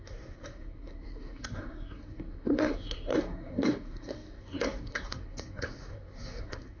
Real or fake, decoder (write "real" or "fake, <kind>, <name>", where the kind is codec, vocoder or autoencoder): fake, codec, SNAC